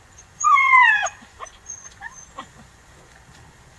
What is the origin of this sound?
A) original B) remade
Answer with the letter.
B